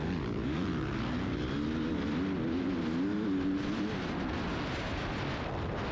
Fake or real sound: real